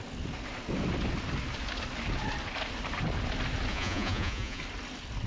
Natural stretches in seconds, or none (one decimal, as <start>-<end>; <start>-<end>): 0.0-3.7; 4.6-5.3

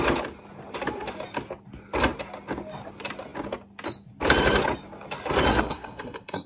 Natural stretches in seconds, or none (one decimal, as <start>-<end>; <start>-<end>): 0.0-5.5

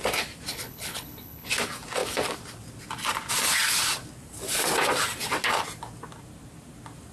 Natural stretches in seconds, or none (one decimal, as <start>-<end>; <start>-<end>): 0.0-0.5; 1.5-7.1

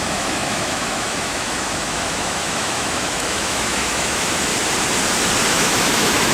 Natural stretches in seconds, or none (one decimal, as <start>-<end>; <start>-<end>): 4.5-5.5

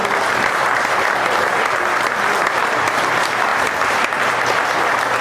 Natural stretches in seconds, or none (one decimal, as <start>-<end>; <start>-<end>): 0.0-5.2

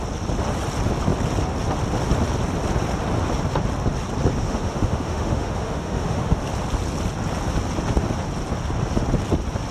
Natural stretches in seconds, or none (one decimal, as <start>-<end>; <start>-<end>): 0.0-4.4; 6.4-9.7

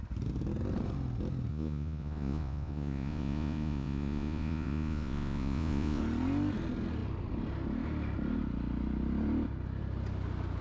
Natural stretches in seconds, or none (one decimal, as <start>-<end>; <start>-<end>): 0.0-1.5; 6.0-10.6